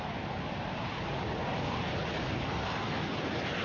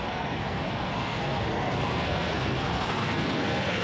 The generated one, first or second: second